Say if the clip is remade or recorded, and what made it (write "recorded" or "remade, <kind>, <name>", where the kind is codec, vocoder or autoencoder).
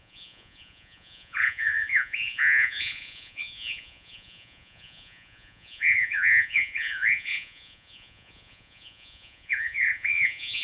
remade, vocoder, Vocos